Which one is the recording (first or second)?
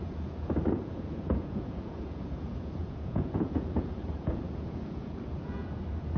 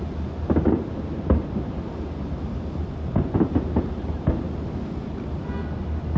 second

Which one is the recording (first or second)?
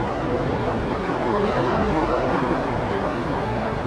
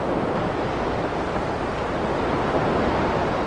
second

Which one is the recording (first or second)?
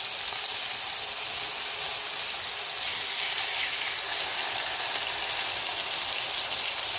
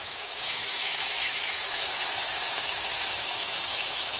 first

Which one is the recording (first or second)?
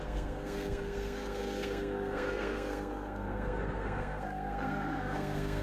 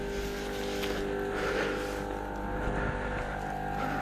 second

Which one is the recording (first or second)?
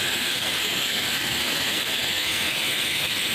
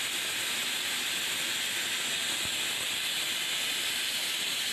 second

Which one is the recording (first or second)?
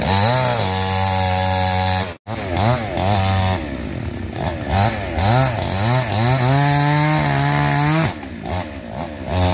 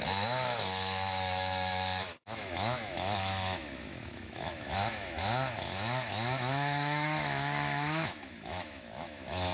first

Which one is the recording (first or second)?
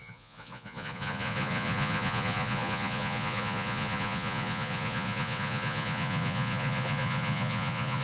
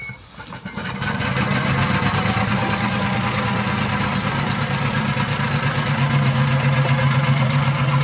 second